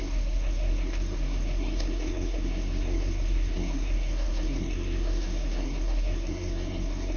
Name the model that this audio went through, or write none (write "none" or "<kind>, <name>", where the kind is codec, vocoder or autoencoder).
codec, SNAC